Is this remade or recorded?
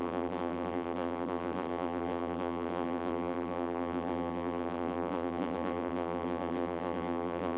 remade